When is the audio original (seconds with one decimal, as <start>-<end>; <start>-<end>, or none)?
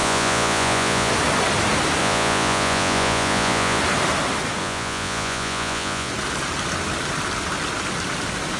1.1-2.0; 3.8-4.6; 6.1-8.6